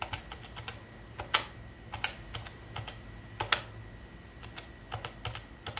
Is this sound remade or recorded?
recorded